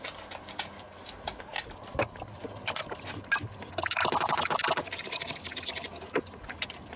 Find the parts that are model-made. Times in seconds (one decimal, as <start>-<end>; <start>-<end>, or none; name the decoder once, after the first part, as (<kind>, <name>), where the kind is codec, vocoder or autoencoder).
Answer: none